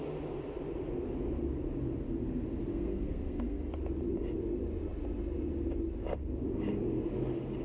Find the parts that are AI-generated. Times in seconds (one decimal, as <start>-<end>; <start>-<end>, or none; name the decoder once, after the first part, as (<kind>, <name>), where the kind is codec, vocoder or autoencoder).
2.7-3.7 (codec, SNAC)